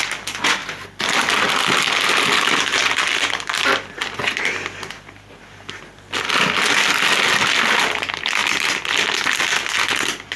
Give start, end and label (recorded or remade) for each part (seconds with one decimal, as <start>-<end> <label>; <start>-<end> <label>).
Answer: 0.0-10.4 recorded